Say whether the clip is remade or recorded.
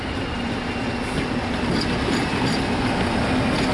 recorded